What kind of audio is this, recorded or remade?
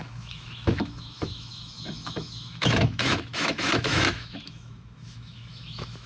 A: remade